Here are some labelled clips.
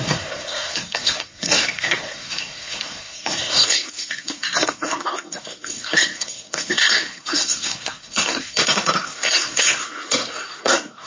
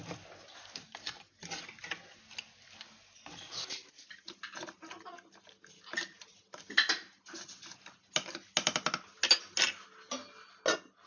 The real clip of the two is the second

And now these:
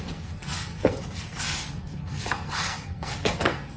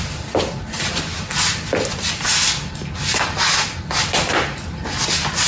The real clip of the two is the second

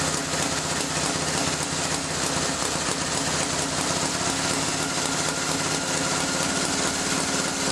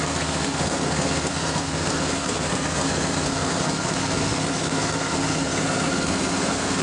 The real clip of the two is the first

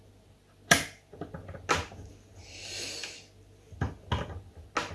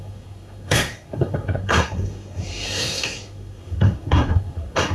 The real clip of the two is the first